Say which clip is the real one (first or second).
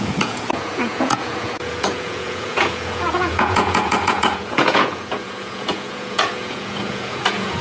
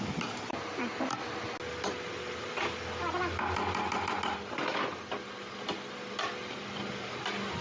second